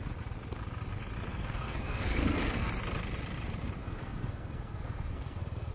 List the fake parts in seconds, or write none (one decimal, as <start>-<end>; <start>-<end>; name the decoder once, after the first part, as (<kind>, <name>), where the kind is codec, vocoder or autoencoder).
1.3-2.7 (codec, SNAC); 3.8-5.7